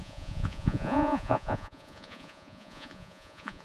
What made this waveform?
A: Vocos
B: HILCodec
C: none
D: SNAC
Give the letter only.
A